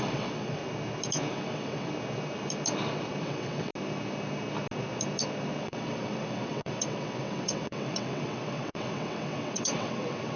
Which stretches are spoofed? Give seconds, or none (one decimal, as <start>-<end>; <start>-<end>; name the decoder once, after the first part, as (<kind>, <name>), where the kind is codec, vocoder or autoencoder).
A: 0.0-0.6 (vocoder, WaveNeXt); 1.3-1.9; 3.2-3.7; 5.6-10.4